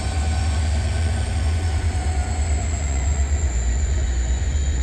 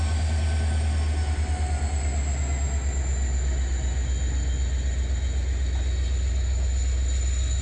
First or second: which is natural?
second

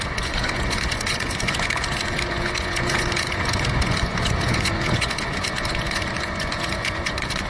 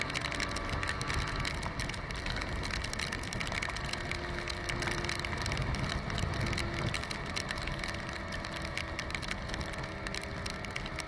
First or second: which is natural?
second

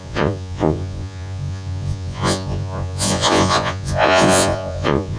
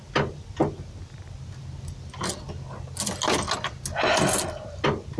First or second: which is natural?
second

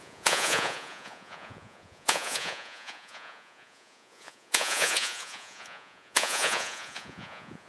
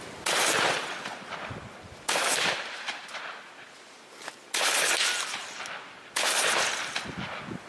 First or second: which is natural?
second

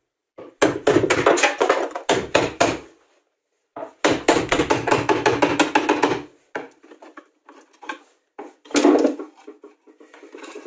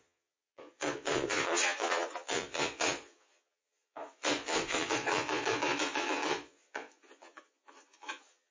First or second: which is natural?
first